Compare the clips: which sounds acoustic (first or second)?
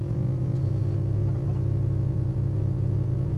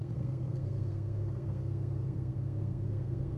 first